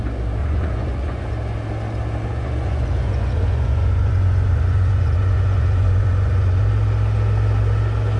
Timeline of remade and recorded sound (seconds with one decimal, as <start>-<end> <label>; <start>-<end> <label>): 0.0-0.4 recorded; 0.4-1.3 remade; 1.3-2.3 recorded; 2.3-6.6 remade; 6.6-8.2 recorded